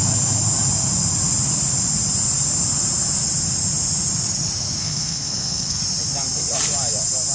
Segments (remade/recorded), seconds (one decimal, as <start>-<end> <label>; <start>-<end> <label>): 0.0-4.8 recorded; 4.8-5.8 remade; 5.8-7.3 recorded